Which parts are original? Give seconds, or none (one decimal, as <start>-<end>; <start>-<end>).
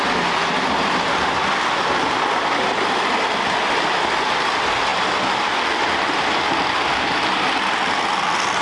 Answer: 0.0-8.6